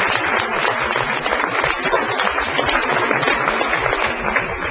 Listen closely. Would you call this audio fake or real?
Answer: real